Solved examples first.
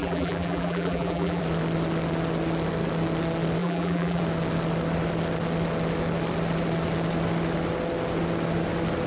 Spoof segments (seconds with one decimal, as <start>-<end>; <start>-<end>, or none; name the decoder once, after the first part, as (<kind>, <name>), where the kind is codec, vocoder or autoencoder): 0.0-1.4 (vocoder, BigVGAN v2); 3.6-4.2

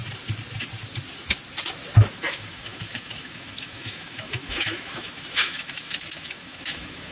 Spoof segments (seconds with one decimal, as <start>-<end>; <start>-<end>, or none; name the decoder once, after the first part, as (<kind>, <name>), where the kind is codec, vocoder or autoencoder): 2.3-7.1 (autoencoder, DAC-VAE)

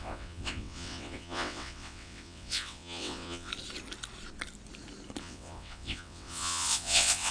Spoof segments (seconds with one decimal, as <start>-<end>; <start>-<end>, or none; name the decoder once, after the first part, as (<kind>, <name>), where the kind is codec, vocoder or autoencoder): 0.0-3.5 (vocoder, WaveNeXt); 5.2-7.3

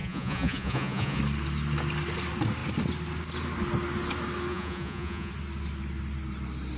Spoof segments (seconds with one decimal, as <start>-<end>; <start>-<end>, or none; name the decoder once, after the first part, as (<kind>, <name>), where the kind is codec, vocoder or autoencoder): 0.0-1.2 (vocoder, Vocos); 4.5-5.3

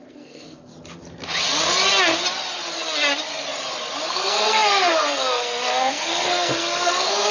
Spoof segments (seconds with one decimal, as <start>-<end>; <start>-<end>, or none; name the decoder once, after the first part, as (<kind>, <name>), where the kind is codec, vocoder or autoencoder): 0.0-0.7 (codec, SNAC); 4.1-7.3

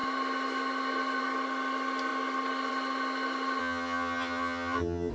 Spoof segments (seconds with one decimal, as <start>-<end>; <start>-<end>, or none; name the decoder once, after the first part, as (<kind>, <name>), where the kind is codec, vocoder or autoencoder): 3.6-5.1 (vocoder, HiFi-GAN)

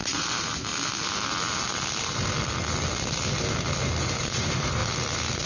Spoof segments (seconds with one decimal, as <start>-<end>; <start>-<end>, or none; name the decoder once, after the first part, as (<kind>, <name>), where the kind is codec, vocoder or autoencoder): 0.0-0.7 (vocoder, BigVGAN v2); 4.0-4.8